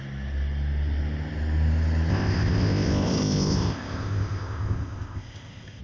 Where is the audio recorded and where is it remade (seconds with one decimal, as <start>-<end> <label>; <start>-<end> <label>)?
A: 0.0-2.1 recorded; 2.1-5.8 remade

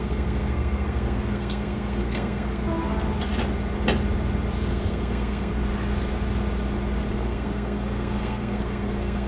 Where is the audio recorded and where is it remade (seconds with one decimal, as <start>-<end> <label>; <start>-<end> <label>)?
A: 0.0-2.6 remade; 2.6-4.7 recorded; 4.7-5.6 remade; 5.6-7.1 recorded; 7.1-9.3 remade

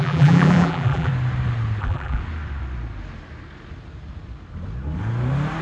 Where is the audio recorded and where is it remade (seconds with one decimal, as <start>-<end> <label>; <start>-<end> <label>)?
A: 0.0-1.1 remade; 1.1-1.8 recorded; 1.8-2.2 remade; 2.2-5.6 recorded

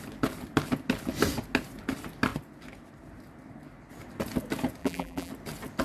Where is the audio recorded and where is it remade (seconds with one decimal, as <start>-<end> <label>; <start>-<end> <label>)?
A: 0.0-4.8 recorded; 4.8-5.3 remade; 5.3-5.8 recorded

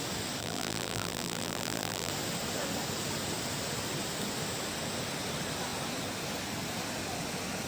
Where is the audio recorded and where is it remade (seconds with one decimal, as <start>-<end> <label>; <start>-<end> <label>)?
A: 0.0-0.4 recorded; 0.4-2.1 remade; 2.1-7.7 recorded

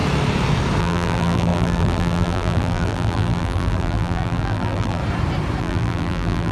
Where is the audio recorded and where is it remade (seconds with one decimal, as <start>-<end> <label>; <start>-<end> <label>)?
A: 0.0-0.8 recorded; 0.8-5.0 remade; 5.0-5.6 recorded; 5.6-6.5 remade

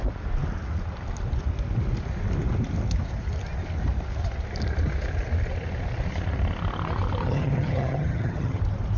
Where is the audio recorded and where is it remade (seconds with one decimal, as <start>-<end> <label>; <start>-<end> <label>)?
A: 0.0-7.2 recorded; 7.2-8.6 remade; 8.6-9.0 recorded